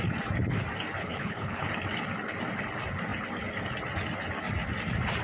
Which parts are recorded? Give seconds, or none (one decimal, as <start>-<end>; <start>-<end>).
0.0-1.0; 1.7-5.2